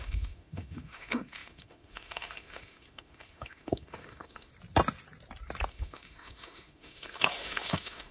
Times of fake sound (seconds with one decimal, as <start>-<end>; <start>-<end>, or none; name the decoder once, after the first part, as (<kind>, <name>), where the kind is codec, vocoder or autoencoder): 0.0-4.5 (autoencoder, DAC-VAE); 5.7-8.1